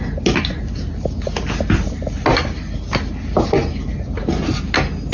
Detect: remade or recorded recorded